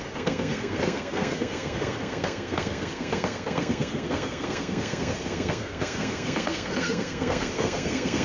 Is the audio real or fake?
fake